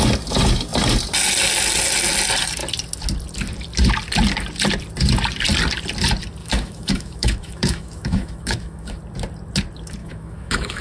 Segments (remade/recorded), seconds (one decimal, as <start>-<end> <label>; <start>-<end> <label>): 0.0-6.4 recorded; 6.4-9.0 remade; 9.0-10.0 recorded; 10.0-10.8 remade